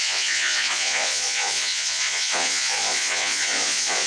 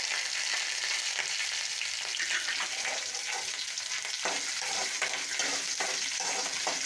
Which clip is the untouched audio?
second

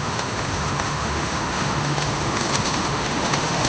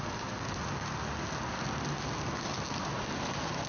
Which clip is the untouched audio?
second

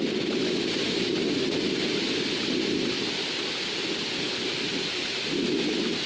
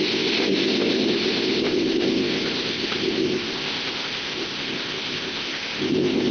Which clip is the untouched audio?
first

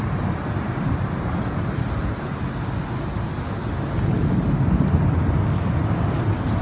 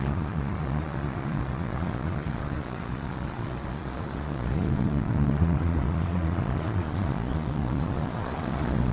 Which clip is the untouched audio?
first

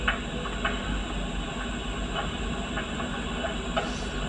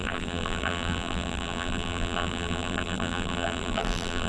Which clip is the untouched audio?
first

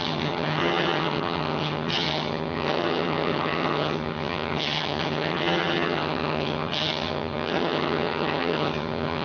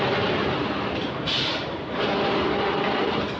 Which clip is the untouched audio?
second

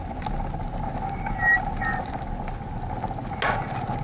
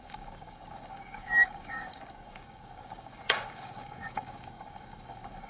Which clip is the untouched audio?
first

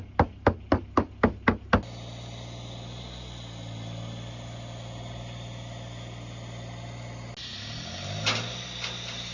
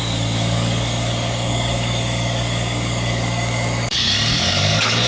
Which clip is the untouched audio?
first